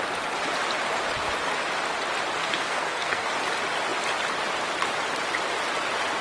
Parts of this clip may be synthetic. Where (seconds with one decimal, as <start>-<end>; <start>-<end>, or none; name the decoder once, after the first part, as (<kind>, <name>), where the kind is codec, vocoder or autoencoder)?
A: 2.4-3.3 (codec, SNAC)